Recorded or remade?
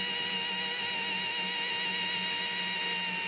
recorded